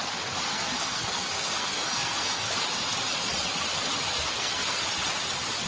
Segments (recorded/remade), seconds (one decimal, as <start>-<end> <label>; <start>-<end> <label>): 0.0-0.5 recorded; 0.5-2.5 remade; 2.5-4.3 recorded; 4.3-4.8 remade; 4.8-5.7 recorded